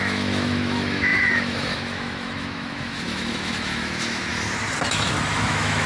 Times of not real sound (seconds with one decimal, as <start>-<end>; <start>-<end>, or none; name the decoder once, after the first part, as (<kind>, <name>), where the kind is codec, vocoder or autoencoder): 0.0-4.3 (autoencoder, DAC-VAE); 4.9-5.9